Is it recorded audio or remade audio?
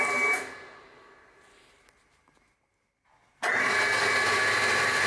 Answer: recorded